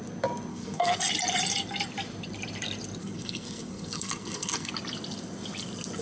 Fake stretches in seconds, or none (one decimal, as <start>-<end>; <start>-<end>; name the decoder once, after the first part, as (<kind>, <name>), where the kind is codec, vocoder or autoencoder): 0.5-1.1 (codec, SNAC); 3.0-4.7

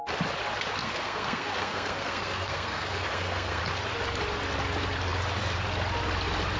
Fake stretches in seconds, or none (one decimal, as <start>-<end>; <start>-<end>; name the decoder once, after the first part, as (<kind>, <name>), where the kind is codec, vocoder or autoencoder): 0.8-3.6 (codec, SNAC)

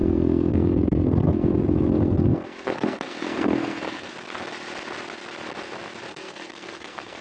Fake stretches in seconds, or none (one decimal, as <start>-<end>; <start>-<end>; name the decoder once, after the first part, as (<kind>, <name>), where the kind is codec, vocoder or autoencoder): 0.0-4.1 (codec, SNAC); 6.1-7.2